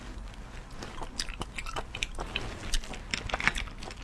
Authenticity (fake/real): real